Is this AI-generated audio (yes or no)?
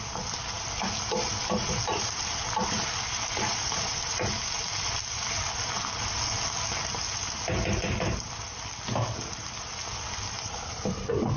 no